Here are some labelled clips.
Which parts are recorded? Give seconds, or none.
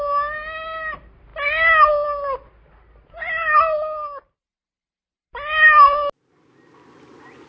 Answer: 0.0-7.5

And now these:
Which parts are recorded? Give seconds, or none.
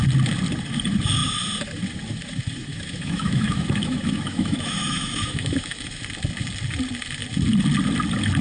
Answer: 0.0-2.7; 6.0-8.4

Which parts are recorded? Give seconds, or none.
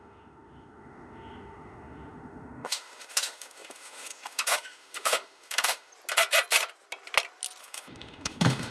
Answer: 5.9-7.6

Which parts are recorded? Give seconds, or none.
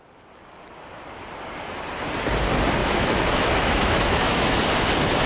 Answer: 0.0-2.8; 4.6-5.3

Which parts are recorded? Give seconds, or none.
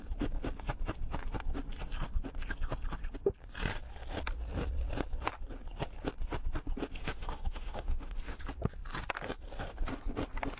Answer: 0.0-7.0; 8.4-10.6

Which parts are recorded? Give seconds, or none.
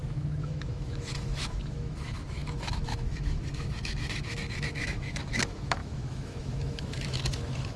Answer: none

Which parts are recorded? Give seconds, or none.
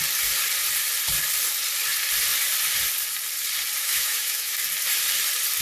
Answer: 0.0-3.8; 4.6-5.6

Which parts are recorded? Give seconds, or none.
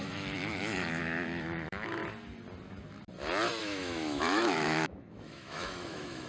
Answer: 2.0-3.6